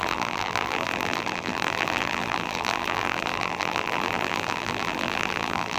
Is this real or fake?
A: fake